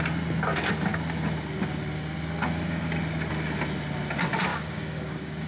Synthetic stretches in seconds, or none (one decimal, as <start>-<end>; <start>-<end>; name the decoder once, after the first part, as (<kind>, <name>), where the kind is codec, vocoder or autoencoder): 4.5-5.5 (codec, DAC)